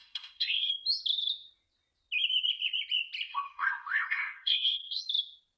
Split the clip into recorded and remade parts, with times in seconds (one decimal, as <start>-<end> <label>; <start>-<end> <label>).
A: 0.0-0.7 remade; 0.7-3.3 recorded; 3.3-5.0 remade; 5.0-5.6 recorded